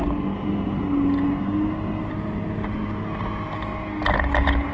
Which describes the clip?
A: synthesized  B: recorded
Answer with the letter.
B